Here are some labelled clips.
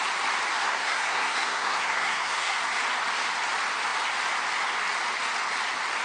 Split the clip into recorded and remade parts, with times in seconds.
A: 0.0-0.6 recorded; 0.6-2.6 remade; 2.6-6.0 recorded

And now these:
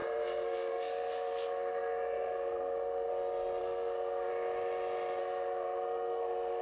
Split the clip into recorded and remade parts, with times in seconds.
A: 0.0-3.1 remade; 3.1-3.6 recorded; 3.6-4.3 remade; 4.3-5.2 recorded; 5.2-6.6 remade

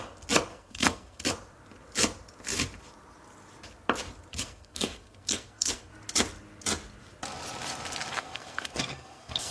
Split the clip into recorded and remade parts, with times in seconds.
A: 0.0-0.5 recorded; 0.5-1.3 remade; 1.3-4.3 recorded; 4.3-5.9 remade; 5.9-8.1 recorded; 8.1-9.5 remade

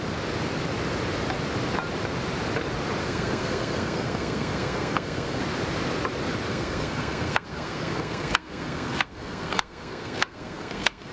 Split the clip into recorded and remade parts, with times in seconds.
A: 0.0-3.0 recorded; 3.0-5.4 remade; 5.4-6.5 recorded; 6.5-11.1 remade

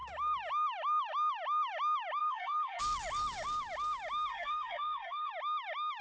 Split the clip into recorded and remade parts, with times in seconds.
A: 0.0-2.2 recorded; 2.2-2.8 remade; 2.8-4.3 recorded; 4.3-5.3 remade; 5.3-6.0 recorded

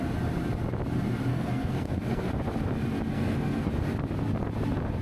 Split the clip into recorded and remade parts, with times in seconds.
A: 0.0-1.3 recorded; 1.3-2.3 remade; 2.3-3.1 recorded; 3.1-3.7 remade; 3.7-5.0 recorded

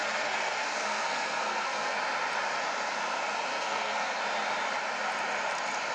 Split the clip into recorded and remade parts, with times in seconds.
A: 0.0-2.0 remade; 2.0-3.5 recorded; 3.5-4.2 remade; 4.2-5.9 recorded

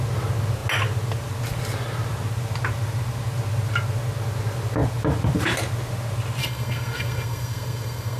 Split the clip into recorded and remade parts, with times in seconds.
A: 0.0-6.4 recorded; 6.4-8.2 remade